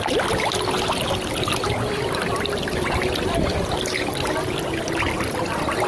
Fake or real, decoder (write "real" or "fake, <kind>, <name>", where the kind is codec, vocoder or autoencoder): real